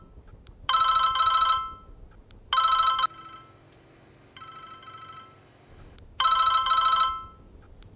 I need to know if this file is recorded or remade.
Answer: recorded